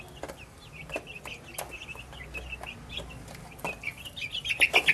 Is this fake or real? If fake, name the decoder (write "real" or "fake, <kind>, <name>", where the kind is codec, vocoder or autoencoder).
real